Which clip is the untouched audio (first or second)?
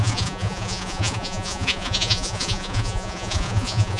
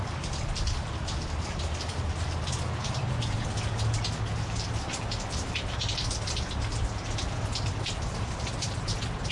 second